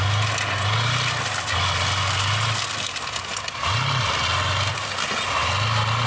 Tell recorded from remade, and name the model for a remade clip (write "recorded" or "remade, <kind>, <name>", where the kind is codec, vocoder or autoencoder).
recorded